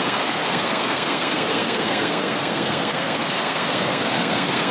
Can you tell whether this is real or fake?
fake